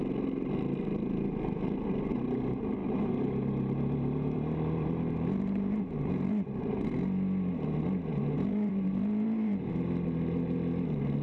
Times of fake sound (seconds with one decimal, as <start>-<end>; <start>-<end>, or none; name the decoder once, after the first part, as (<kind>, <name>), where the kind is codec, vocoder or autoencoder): 2.8-6.6 (vocoder, BigVGAN v2); 8.1-9.7